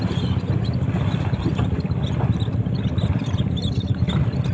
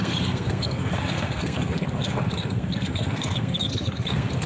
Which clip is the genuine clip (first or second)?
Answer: first